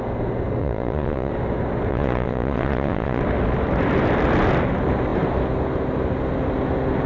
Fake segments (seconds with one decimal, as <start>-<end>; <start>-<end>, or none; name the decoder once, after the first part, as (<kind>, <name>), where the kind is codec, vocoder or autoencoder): 0.6-1.3 (vocoder, Vocos); 1.9-3.2